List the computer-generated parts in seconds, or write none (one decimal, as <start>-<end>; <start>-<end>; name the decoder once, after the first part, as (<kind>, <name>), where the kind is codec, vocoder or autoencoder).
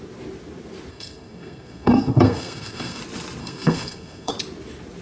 0.9-3.0 (codec, SNAC); 3.4-4.3